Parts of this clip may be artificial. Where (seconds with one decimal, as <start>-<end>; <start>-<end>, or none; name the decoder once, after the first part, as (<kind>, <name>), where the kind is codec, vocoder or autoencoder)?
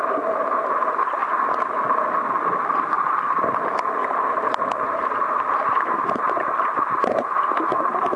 4.0-8.2 (vocoder, BigVGAN v2)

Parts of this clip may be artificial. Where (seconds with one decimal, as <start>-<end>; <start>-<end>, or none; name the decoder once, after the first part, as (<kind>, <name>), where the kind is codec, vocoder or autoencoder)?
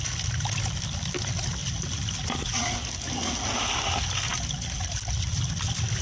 none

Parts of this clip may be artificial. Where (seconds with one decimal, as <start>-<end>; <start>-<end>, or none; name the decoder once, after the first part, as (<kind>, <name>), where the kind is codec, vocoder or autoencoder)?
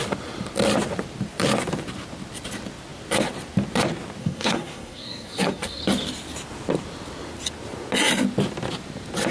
4.2-5.8 (codec, SNAC)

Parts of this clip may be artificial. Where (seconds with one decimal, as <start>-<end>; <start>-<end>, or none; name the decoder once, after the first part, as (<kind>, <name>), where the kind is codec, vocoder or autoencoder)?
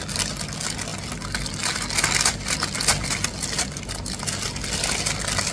none